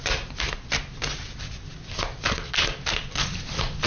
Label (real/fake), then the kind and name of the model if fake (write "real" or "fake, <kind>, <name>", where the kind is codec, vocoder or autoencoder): real